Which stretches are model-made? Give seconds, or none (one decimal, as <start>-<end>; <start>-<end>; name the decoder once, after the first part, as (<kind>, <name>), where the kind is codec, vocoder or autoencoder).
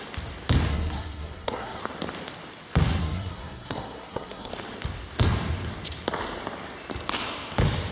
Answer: 0.7-1.8 (codec, SNAC); 3.0-4.5